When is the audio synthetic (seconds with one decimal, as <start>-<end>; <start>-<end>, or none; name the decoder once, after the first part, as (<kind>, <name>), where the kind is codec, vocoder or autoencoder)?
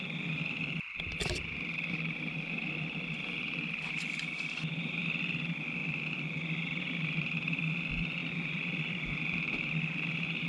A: 0.0-10.5 (vocoder, BigVGAN v2)